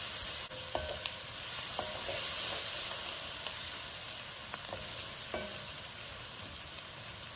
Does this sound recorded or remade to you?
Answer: recorded